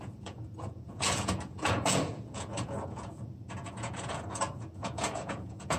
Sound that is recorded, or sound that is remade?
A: remade